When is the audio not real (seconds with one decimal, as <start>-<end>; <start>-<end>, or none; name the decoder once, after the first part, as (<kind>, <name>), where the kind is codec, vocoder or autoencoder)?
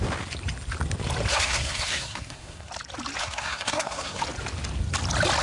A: 1.3-2.7 (codec, SNAC); 3.2-4.2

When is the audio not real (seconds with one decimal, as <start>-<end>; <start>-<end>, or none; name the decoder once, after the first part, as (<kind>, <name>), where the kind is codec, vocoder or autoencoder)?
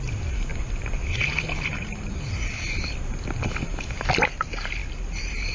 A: none